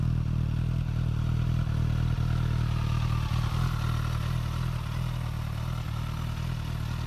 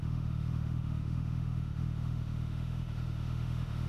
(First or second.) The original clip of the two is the first